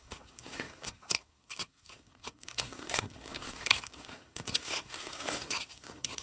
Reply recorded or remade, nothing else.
remade